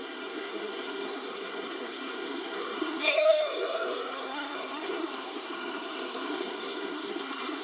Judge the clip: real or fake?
fake